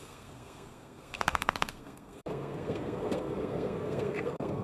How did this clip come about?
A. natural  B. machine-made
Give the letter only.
B